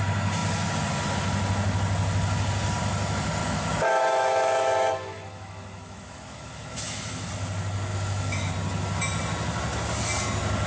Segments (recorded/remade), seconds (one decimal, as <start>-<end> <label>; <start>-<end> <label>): 0.0-3.4 recorded; 3.4-7.3 remade; 7.3-7.9 recorded; 7.9-8.5 remade; 8.5-10.7 recorded